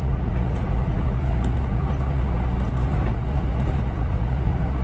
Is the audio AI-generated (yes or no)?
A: yes